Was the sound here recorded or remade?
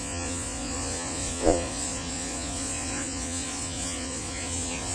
remade